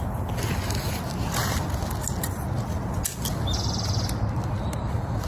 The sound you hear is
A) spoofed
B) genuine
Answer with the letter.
B